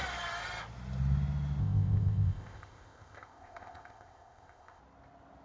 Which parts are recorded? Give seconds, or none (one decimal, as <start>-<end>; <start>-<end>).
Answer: 0.0-1.6; 4.8-5.4